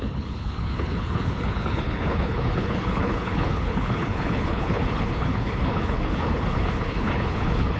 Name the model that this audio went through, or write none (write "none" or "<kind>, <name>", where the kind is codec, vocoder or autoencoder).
codec, HILCodec